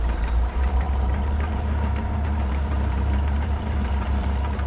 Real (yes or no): no